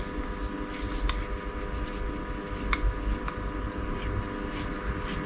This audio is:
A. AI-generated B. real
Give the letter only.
B